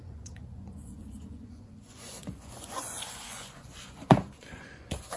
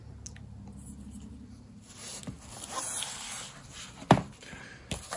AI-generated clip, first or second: first